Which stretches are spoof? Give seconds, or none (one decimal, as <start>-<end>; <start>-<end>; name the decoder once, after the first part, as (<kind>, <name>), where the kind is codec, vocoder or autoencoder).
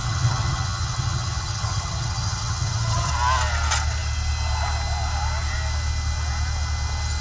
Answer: 0.0-3.1 (vocoder, HiFi-GAN)